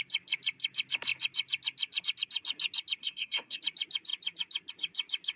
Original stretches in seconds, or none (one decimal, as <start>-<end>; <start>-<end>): 0.0-3.0; 3.6-5.4